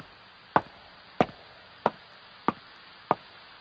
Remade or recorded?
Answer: recorded